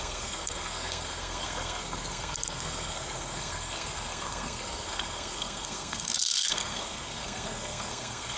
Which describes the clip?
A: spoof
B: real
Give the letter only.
A